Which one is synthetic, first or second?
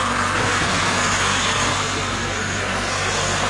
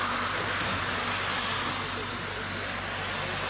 first